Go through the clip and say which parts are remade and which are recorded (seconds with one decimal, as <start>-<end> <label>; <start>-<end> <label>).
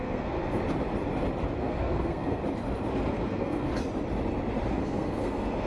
0.0-0.6 remade; 0.6-1.6 recorded; 1.6-2.4 remade; 2.4-3.1 recorded; 3.1-3.7 remade; 3.7-4.7 recorded; 4.7-5.7 remade